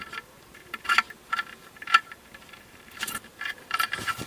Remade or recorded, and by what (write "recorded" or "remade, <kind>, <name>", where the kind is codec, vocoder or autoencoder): remade, vocoder, BigVGAN v2